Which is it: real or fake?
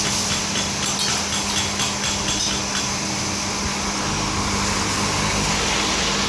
real